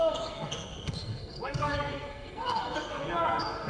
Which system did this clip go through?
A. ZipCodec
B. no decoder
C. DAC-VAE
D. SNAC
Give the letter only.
D